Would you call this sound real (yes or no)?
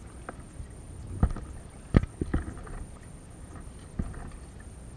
yes